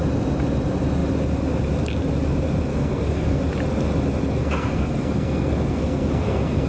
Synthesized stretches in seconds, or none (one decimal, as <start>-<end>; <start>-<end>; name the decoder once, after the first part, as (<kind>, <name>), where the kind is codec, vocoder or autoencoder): 2.7-3.4 (codec, SNAC); 4.4-6.7